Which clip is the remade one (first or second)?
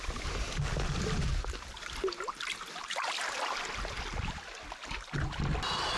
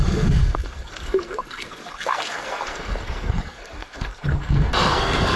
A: second